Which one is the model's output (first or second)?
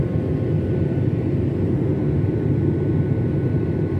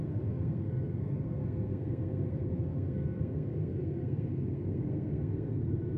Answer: second